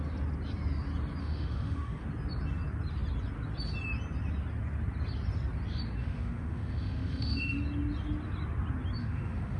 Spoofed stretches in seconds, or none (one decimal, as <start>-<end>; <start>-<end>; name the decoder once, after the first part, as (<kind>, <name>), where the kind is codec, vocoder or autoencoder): 1.2-2.0 (autoencoder, DAC-VAE); 6.0-7.6; 9.0-9.6